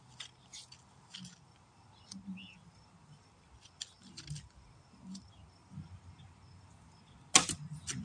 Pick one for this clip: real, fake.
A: real